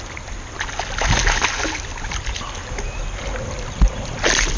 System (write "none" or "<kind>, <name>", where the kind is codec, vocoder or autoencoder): none